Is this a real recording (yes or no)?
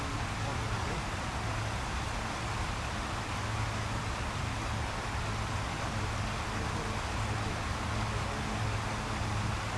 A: yes